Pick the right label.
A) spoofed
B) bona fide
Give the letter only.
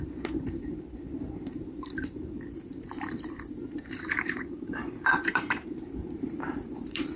A